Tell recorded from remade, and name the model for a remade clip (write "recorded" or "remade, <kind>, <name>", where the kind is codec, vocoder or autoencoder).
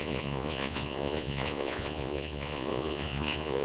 remade, vocoder, Vocos